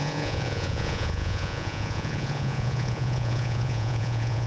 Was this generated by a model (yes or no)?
yes